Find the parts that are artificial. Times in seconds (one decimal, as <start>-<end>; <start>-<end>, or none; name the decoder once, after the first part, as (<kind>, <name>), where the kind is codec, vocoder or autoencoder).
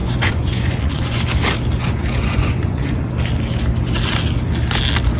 0.0-1.2 (vocoder, Vocos); 1.8-3.1